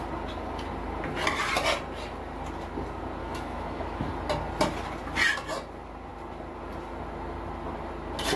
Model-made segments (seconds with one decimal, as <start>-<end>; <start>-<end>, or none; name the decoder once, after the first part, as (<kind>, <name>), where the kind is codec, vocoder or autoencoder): 3.2-4.1 (autoencoder, DAC-VAE)